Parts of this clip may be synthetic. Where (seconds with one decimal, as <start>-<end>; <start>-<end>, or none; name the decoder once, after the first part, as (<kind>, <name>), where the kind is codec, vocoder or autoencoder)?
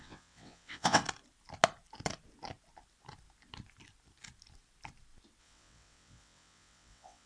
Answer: 0.0-1.0 (vocoder, WaveNeXt); 5.4-7.3